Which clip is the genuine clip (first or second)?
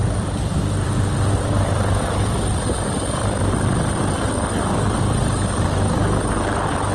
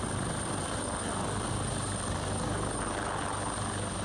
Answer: second